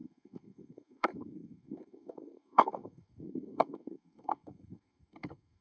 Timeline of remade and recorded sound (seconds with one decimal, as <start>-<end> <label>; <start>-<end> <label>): 0.0-5.6 remade